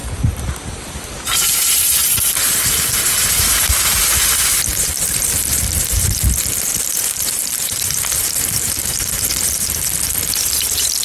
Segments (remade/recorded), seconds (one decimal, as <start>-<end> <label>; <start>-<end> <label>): 0.0-3.5 remade; 3.5-4.7 recorded; 4.7-6.2 remade; 6.2-6.7 recorded; 6.7-9.7 remade; 9.7-11.0 recorded